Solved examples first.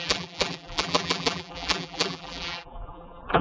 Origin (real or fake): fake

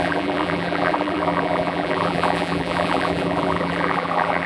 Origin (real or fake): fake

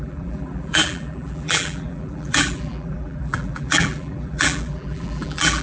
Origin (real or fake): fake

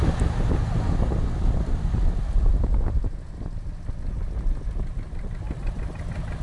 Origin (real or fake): real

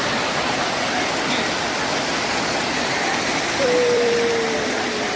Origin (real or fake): fake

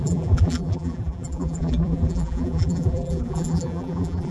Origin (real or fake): fake